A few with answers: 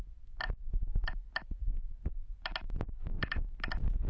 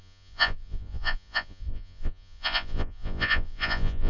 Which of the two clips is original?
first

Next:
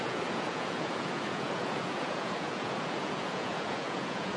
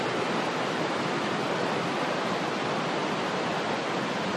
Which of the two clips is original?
second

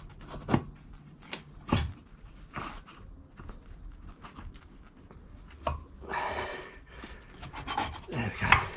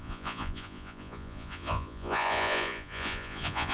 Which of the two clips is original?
first